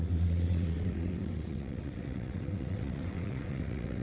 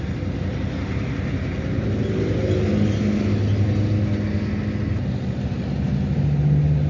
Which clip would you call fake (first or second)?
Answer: first